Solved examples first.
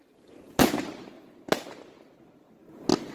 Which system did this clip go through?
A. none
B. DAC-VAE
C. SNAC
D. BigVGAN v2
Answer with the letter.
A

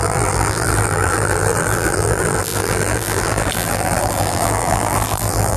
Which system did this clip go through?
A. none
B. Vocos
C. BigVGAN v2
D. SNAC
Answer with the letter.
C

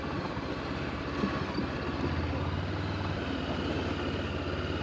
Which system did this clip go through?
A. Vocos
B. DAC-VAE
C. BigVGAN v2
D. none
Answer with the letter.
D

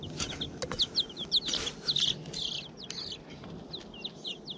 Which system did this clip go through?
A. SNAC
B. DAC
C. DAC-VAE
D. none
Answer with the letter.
D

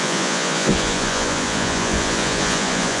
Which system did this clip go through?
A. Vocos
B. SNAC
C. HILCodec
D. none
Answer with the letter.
A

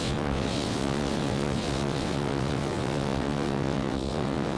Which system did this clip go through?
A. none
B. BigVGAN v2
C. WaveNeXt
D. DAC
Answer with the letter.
C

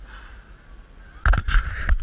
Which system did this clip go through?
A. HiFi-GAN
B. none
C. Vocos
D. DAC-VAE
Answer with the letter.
B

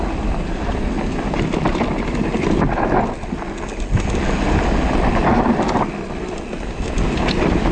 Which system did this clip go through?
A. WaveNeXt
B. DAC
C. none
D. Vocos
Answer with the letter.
C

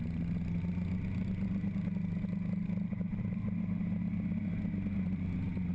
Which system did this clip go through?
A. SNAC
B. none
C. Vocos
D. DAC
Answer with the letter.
B